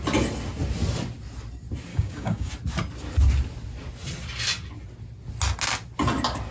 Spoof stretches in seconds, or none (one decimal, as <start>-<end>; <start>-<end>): 1.9-2.5